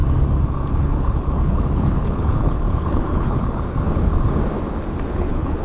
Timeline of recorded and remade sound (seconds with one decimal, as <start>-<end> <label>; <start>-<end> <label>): 0.0-0.7 recorded; 0.7-4.1 remade; 4.1-5.1 recorded; 5.1-5.6 remade